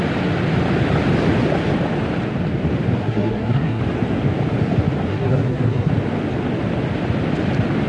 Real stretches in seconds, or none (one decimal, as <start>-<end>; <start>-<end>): 0.0-3.0; 3.8-5.1; 5.9-7.9